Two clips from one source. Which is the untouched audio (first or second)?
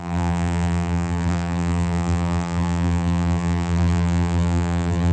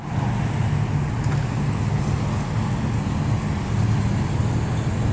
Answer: second